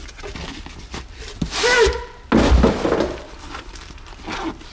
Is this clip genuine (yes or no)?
yes